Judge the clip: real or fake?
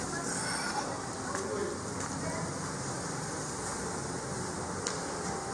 real